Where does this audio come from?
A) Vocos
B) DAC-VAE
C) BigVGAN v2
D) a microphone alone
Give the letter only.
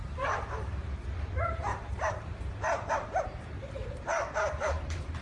C